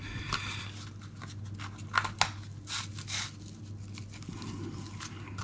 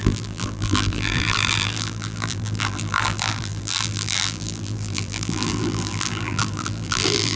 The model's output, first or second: second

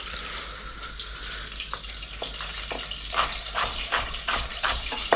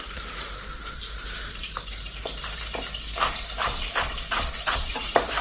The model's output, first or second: second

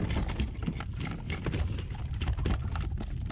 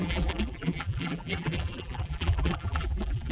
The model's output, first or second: second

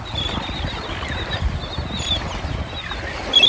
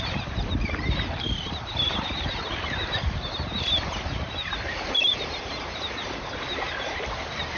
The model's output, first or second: second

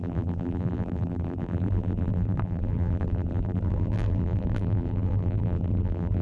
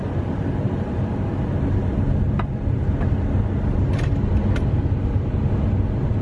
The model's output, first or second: first